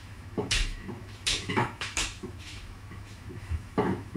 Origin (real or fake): fake